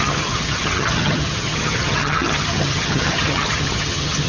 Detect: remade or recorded remade